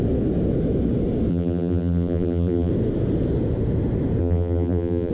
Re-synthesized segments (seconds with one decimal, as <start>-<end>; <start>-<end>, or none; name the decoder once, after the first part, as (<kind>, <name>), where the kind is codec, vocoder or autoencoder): 1.3-2.7 (vocoder, BigVGAN v2); 4.2-5.1

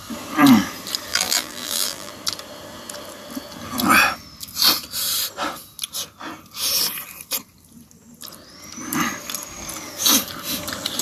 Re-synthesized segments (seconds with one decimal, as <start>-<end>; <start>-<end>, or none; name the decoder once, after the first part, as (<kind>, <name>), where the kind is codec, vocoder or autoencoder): 1.1-2.1 (vocoder, BigVGAN v2)

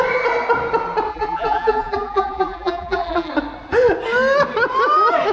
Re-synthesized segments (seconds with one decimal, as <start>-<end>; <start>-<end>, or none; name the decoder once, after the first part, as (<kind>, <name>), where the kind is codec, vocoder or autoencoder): 1.1-3.3 (vocoder, BigVGAN v2)

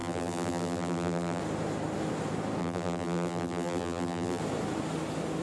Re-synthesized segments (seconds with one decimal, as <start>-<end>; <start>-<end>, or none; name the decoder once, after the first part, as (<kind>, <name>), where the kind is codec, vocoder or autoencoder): 0.0-1.4 (vocoder, BigVGAN v2); 2.6-4.4

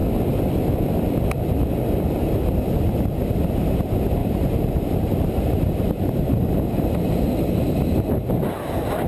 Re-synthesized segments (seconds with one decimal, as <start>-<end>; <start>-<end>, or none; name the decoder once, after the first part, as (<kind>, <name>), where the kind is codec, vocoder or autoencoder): 4.2-7.9 (vocoder, BigVGAN v2)

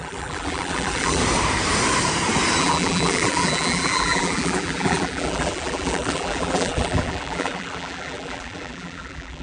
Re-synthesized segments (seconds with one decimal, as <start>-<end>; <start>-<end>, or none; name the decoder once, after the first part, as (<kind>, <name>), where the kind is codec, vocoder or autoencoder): 0.0-1.2 (vocoder, BigVGAN v2); 2.6-9.4